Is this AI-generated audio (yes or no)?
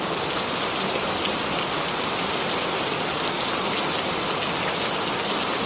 no